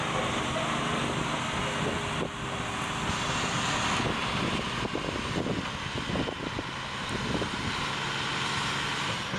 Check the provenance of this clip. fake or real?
real